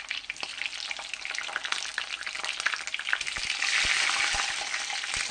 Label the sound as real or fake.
real